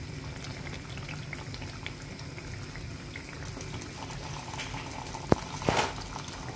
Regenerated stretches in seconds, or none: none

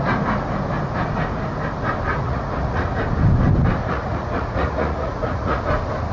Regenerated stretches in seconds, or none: 2.1-3.0 (vocoder, Vocos); 3.8-5.6

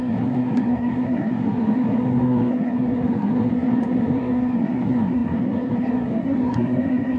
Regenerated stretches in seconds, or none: 0.0-7.2 (codec, SNAC)